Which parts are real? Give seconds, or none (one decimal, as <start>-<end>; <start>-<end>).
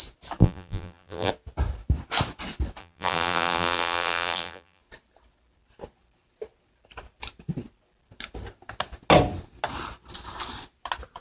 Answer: 0.0-0.4; 1.3-2.8; 4.8-11.2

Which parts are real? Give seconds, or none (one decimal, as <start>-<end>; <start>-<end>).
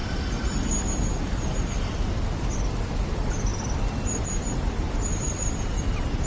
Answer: 0.0-3.5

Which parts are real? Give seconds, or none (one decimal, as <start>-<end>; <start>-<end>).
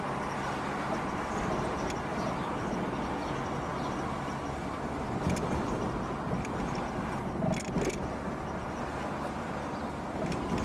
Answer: 0.0-2.1; 2.7-10.6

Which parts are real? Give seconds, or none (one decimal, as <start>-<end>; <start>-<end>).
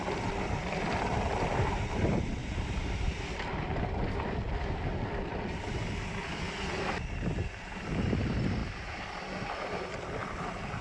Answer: 0.0-1.3; 1.8-10.8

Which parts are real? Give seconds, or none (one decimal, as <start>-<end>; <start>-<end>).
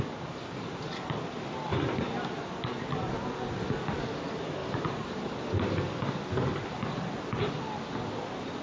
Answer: 0.0-8.6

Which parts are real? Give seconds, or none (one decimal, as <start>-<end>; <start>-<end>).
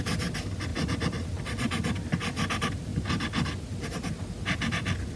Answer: 2.9-4.4